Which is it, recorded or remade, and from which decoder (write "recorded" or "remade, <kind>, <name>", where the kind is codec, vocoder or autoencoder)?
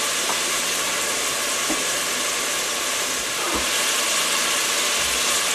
recorded